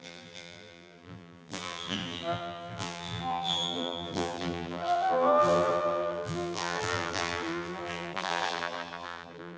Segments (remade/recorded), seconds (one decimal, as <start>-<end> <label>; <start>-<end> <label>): 0.0-9.6 remade